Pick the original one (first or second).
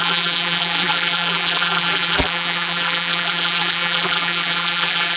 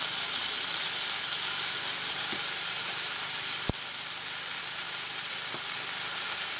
second